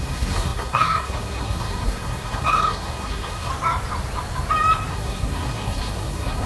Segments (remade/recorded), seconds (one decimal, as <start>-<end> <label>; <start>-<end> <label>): 0.0-3.5 remade; 3.5-4.9 recorded; 4.9-6.5 remade